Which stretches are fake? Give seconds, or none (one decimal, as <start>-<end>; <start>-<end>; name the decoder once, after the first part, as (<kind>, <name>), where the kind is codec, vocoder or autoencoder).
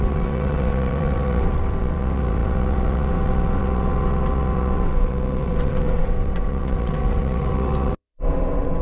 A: 0.0-8.8 (vocoder, WaveNeXt)